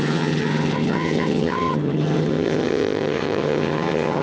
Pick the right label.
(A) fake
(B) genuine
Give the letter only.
A